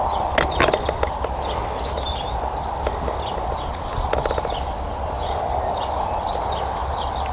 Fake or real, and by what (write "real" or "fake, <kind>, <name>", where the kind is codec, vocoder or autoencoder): real